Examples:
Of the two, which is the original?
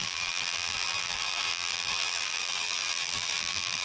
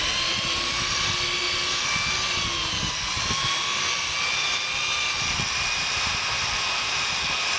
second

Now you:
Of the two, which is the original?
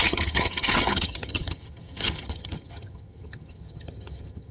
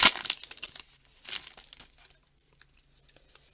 second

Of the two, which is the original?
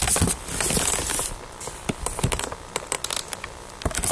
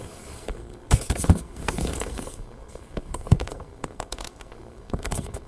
first